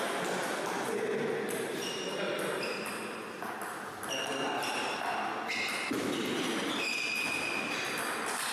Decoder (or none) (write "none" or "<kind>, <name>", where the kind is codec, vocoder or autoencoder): none